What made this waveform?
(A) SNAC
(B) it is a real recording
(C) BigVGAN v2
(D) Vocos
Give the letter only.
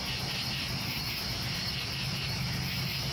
B